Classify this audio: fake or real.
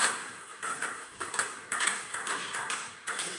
fake